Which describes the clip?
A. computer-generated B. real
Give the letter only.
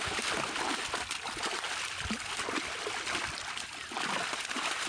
B